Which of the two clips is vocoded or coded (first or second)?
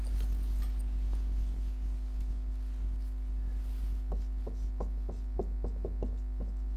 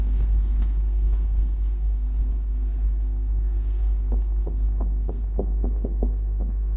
second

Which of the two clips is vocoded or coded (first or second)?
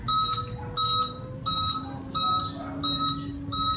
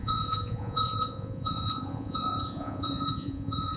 second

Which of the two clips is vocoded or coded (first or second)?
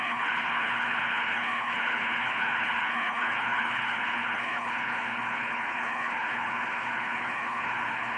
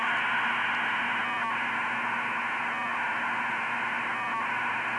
first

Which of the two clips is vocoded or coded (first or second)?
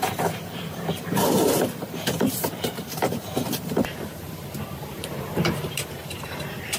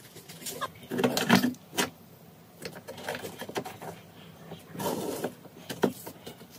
first